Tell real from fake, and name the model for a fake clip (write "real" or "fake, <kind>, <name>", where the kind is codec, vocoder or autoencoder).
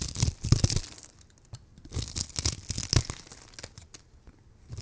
real